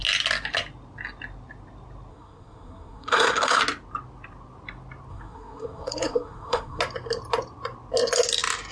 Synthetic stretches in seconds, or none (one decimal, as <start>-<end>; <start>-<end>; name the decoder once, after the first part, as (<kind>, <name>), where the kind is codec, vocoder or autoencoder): 2.1-3.6 (codec, SNAC); 5.1-6.8